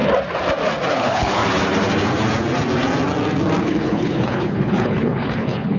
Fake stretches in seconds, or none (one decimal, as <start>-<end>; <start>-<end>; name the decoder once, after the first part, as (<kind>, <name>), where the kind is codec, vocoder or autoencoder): 0.9-1.4 (codec, HILCodec); 3.6-5.8